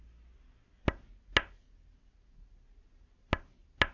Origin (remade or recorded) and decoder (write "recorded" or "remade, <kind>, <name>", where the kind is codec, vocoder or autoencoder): recorded